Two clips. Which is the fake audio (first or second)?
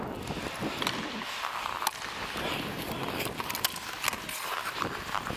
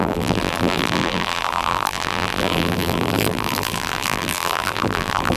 second